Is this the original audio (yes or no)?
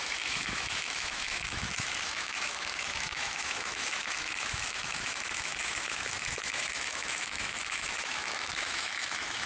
no